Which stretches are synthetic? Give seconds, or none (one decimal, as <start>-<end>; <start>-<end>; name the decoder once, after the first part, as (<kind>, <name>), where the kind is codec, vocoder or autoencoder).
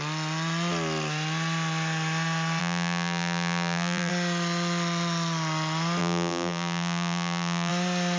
2.6-4.1 (vocoder, BigVGAN v2); 6.0-7.7